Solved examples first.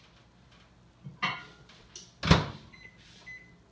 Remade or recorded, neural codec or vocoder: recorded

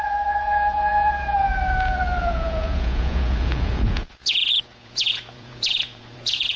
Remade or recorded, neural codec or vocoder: remade, vocoder, Vocos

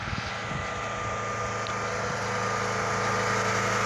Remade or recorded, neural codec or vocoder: recorded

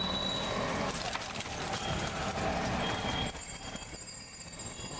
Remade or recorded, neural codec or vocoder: recorded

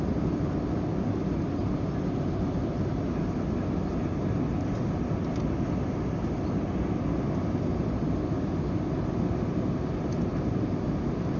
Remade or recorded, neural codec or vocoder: recorded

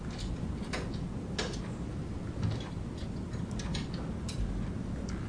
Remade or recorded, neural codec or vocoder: recorded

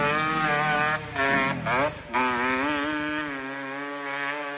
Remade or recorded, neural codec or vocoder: recorded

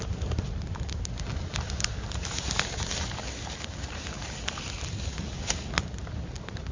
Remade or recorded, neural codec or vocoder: recorded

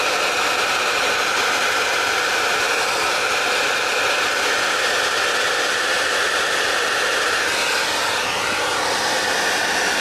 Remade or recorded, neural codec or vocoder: recorded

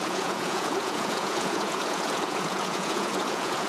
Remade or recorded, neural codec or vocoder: remade, vocoder, Vocos